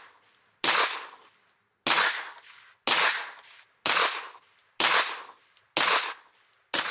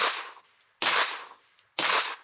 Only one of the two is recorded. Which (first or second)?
first